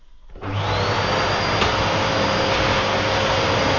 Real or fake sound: real